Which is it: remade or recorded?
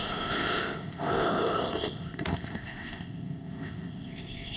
remade